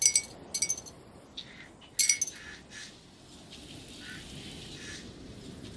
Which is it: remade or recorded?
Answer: recorded